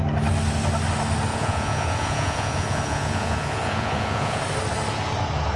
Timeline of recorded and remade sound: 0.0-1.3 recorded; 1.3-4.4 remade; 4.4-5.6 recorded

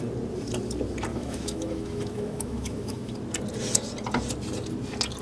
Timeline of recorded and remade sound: 0.0-1.1 recorded; 1.1-3.1 remade; 3.1-5.2 recorded

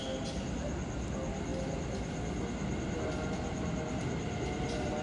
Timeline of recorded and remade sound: 0.0-5.0 recorded

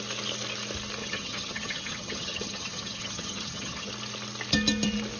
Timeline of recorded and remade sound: 0.0-1.0 recorded; 1.0-3.9 remade; 3.9-5.2 recorded